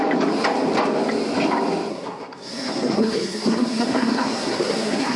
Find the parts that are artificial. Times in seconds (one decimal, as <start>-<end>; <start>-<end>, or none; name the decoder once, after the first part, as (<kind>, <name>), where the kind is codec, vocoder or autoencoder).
1.9-5.2 (codec, SNAC)